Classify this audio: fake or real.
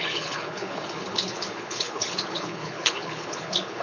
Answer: fake